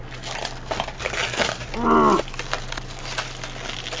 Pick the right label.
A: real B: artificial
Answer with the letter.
A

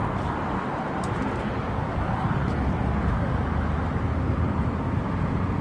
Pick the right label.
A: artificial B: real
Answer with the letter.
B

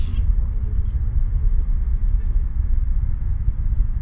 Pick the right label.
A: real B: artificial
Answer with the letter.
A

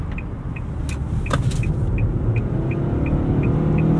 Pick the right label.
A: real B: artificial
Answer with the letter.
A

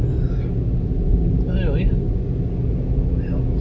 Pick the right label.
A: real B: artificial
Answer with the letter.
A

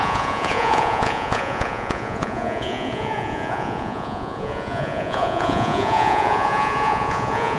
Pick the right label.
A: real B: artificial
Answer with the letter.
B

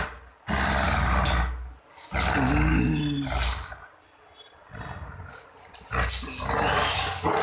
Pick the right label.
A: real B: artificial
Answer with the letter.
A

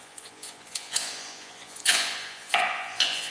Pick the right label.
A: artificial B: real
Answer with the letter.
A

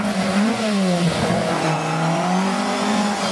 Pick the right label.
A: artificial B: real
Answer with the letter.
A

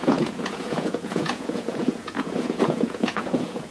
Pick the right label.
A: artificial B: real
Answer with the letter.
A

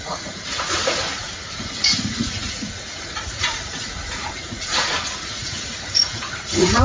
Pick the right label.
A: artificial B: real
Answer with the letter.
A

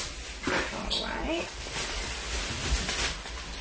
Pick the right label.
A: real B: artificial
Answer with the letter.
A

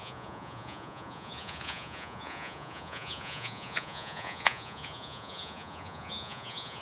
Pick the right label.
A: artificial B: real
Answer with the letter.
A